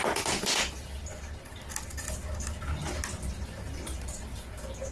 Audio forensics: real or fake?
real